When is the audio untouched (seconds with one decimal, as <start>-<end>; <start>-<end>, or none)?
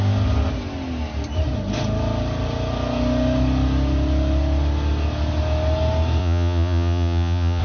0.0-6.2